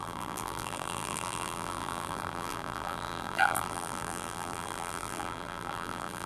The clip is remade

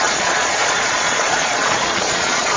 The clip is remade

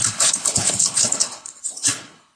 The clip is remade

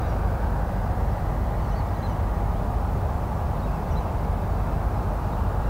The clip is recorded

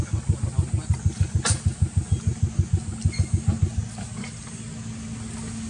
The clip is recorded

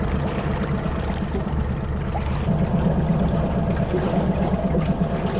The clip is recorded